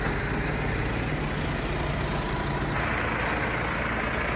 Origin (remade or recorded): recorded